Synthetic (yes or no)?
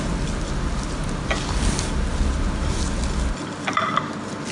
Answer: no